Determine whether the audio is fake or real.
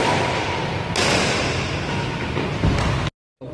real